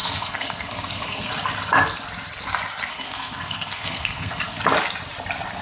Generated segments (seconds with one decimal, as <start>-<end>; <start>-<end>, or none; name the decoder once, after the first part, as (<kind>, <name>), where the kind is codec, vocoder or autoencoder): 0.0-1.3 (codec, SNAC); 2.9-4.6